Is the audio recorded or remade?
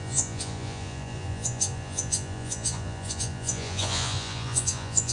remade